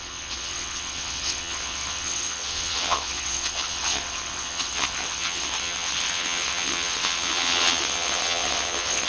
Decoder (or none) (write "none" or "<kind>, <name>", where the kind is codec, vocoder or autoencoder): vocoder, WaveNeXt